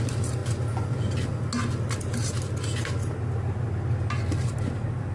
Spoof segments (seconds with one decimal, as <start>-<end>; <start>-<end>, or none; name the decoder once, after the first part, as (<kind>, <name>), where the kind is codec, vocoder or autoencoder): 0.0-0.4 (vocoder, BigVGAN v2); 0.9-1.3; 4.4-5.1